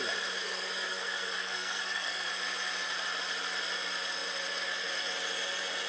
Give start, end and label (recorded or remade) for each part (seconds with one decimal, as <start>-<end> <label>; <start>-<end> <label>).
0.0-0.4 recorded; 0.4-2.3 remade; 2.3-5.9 recorded